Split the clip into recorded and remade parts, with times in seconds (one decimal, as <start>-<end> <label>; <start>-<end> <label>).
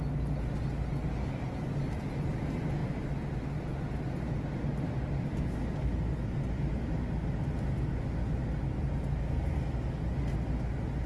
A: 0.0-11.1 recorded